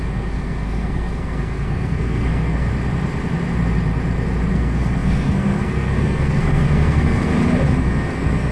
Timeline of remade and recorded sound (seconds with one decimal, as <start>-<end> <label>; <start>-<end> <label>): 0.0-2.7 remade; 2.7-4.5 recorded; 4.5-7.3 remade; 7.3-7.8 recorded; 7.8-8.5 remade